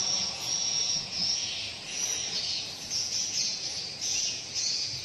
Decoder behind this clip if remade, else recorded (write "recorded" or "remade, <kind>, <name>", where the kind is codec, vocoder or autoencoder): remade, vocoder, Vocos